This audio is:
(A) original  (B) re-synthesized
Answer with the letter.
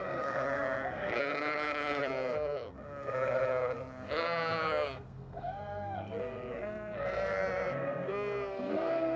B